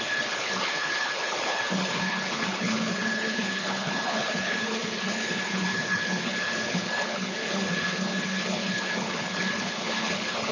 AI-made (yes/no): yes